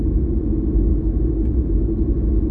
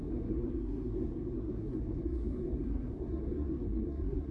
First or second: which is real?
first